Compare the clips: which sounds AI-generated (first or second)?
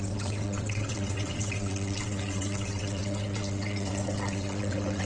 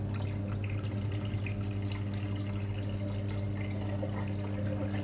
first